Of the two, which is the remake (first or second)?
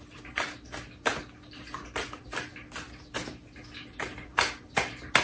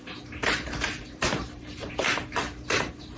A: second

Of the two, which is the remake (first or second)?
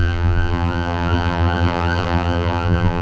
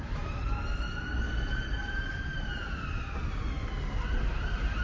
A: first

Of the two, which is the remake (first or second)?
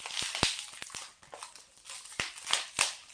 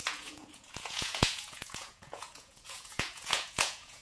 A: second